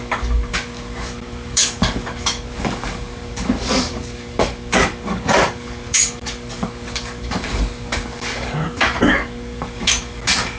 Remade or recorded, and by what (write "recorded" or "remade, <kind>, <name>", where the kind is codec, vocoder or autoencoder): remade, codec, DAC